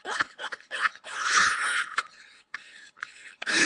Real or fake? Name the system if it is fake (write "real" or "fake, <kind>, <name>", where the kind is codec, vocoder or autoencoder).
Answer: fake, codec, HILCodec